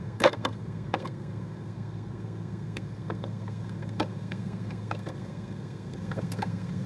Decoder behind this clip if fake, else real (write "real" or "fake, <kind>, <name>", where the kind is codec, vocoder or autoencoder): fake, codec, SNAC